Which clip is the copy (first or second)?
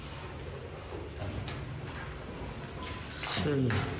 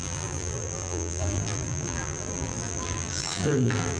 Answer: second